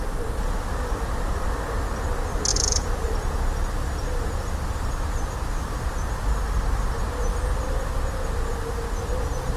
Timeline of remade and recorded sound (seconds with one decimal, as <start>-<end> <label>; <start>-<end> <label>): 0.0-2.5 recorded; 2.5-5.9 remade; 5.9-9.6 recorded